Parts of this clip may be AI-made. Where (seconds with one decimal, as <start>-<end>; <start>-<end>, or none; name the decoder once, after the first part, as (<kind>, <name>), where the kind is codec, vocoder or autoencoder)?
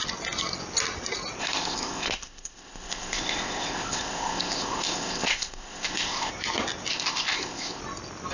1.4-6.3 (codec, ZipCodec); 6.9-7.8